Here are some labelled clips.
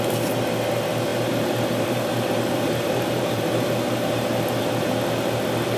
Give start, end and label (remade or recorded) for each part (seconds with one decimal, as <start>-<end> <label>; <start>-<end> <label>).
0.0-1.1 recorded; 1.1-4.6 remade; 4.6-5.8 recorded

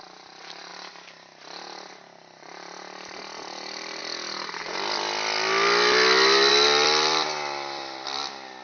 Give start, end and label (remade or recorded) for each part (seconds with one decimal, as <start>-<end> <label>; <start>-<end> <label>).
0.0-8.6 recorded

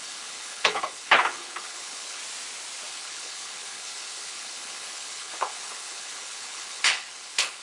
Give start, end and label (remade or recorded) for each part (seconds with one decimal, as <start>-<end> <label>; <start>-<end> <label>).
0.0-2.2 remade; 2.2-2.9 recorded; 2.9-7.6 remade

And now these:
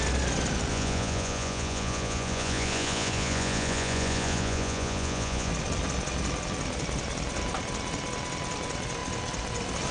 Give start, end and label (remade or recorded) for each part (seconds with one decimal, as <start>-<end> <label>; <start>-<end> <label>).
0.0-0.7 recorded; 0.7-5.5 remade; 5.5-9.9 recorded

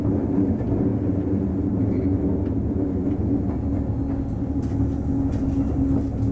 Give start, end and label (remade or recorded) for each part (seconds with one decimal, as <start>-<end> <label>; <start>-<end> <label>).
0.0-6.3 recorded

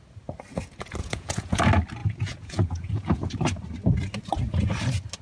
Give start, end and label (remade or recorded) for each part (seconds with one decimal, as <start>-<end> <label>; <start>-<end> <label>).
0.0-1.0 recorded; 1.0-1.6 remade; 1.6-2.0 recorded; 2.0-3.3 remade; 3.3-5.2 recorded

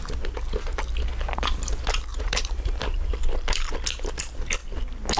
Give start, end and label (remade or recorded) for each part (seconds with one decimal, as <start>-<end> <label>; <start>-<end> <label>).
0.0-2.1 recorded; 2.1-3.1 remade; 3.1-5.2 recorded

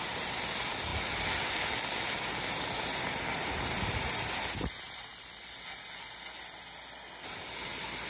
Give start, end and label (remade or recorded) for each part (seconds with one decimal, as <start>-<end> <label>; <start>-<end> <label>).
0.0-8.1 recorded